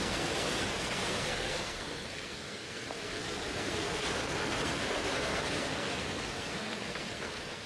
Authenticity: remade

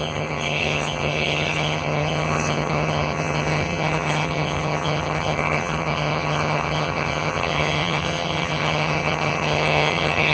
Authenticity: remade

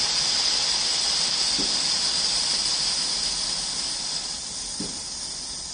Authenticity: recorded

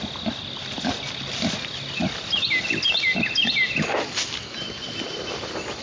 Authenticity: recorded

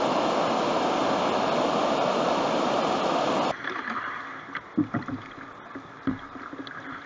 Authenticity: recorded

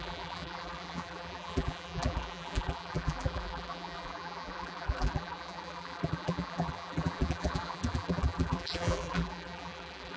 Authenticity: remade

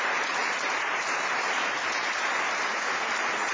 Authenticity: remade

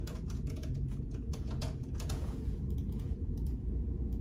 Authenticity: remade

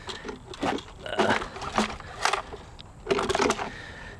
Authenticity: recorded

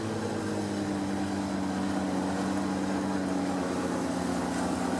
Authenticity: recorded